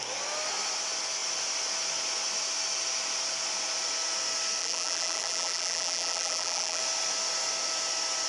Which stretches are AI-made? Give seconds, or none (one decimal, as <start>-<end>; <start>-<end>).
4.6-6.8